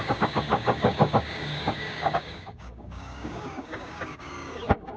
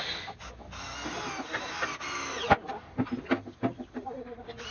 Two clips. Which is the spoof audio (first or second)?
first